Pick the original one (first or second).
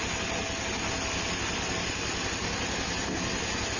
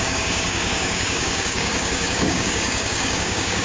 first